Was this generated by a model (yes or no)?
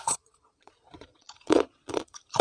yes